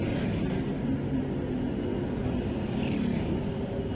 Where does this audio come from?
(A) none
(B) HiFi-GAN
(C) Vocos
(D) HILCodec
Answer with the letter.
A